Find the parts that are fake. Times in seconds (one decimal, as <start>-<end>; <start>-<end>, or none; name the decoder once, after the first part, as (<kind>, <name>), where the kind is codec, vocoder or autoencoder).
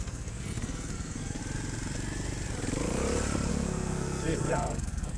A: 0.0-1.4 (codec, SNAC); 3.5-5.2